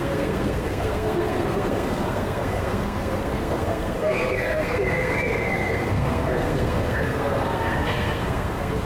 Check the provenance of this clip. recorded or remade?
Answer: remade